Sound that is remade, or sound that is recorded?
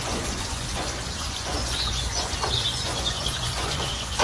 remade